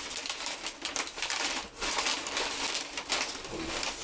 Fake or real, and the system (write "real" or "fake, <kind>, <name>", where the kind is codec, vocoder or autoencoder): real